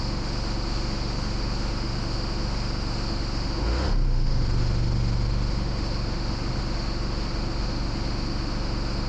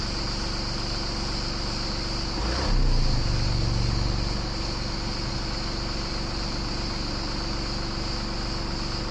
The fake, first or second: first